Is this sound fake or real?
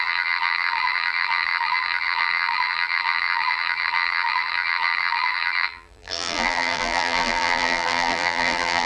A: fake